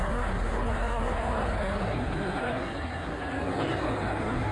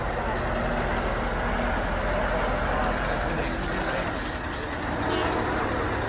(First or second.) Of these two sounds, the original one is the second